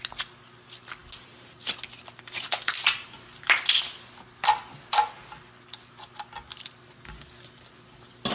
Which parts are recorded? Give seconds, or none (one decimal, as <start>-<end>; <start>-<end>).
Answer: 0.0-8.3